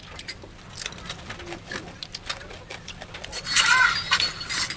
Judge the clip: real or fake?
real